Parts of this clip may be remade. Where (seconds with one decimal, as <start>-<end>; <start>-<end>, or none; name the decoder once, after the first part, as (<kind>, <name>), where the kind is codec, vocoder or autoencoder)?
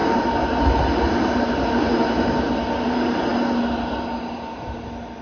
0.0-2.5 (vocoder, BigVGAN v2)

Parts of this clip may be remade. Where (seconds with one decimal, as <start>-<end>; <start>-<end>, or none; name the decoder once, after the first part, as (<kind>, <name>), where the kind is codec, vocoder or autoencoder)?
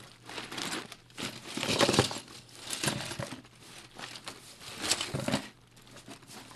none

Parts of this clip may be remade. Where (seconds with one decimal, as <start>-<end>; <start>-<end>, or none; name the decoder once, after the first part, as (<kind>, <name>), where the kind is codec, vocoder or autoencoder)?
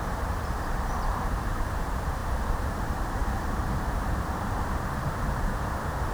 0.0-6.1 (vocoder, BigVGAN v2)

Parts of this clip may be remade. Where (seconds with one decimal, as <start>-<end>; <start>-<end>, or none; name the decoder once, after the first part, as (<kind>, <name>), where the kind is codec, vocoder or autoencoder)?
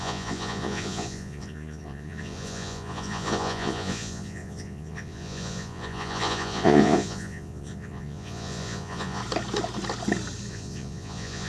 0.0-9.2 (vocoder, Vocos); 10.5-11.5